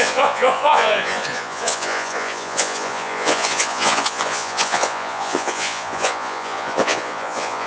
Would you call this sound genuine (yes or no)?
no